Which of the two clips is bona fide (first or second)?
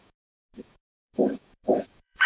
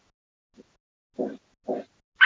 second